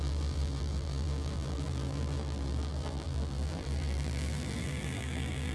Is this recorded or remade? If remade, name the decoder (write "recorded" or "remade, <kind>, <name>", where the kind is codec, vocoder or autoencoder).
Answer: remade, vocoder, BigVGAN v2